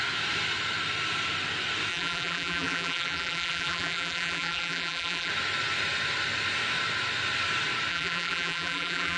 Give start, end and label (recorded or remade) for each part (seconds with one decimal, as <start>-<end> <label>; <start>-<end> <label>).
0.0-1.9 recorded; 1.9-5.3 remade; 5.3-7.9 recorded; 7.9-9.2 remade